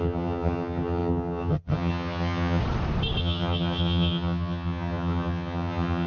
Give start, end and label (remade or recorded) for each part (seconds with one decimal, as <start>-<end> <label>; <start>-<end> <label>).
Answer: 0.0-2.6 remade; 2.6-3.2 recorded; 3.2-6.1 remade